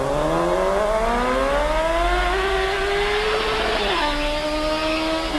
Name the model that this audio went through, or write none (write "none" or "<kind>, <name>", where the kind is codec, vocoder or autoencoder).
none